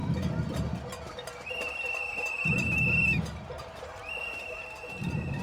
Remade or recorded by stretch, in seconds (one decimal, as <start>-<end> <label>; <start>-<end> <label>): 0.0-3.2 recorded; 3.2-5.4 remade